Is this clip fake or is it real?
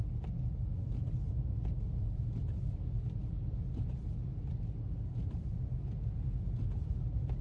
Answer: real